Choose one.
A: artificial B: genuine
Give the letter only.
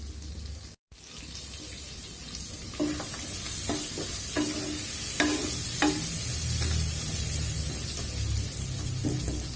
B